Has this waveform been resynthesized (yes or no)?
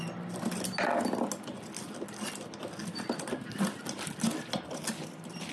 no